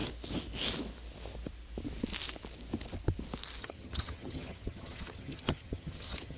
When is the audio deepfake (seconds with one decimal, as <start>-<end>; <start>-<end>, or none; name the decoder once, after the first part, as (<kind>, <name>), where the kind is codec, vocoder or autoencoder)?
3.6-6.4 (vocoder, HiFi-GAN)